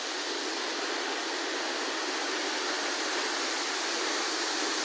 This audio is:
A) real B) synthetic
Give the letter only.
A